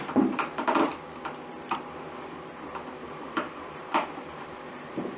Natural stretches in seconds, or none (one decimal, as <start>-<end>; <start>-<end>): 0.9-1.6